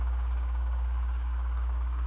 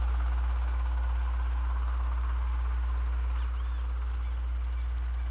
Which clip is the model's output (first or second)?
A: first